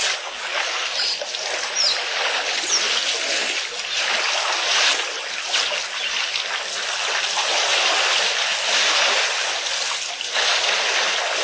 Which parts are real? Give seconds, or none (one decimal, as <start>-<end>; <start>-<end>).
0.0-11.4